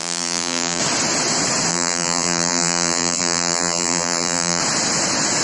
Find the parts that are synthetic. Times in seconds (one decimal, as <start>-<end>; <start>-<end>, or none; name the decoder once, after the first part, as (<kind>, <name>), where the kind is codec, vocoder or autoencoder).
0.0-0.8 (vocoder, BigVGAN v2); 1.7-4.6